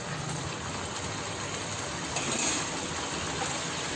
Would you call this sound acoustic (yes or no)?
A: yes